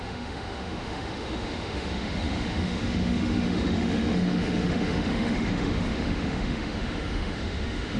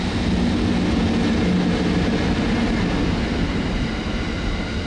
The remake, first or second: first